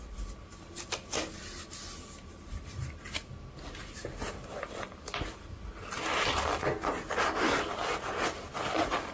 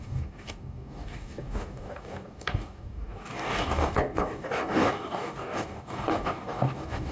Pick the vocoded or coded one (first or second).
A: second